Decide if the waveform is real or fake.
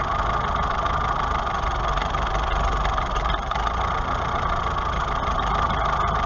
real